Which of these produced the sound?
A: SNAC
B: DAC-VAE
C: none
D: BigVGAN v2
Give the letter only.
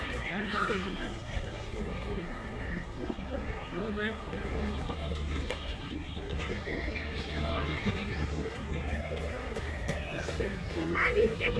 A